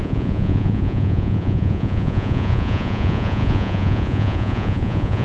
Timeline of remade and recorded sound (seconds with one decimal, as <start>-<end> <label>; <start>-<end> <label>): 0.0-5.2 remade